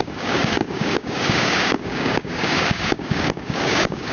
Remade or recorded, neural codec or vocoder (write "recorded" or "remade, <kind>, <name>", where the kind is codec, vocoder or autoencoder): remade, codec, DAC